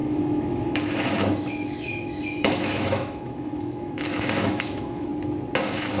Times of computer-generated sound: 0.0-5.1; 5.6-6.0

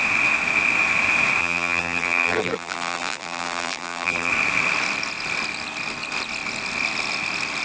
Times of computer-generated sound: 1.4-4.3

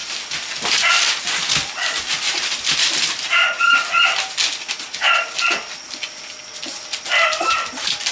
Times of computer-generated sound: none

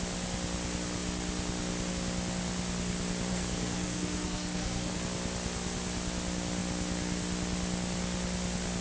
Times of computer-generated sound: 3.3-5.0

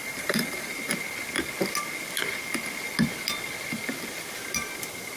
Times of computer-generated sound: 0.0-0.7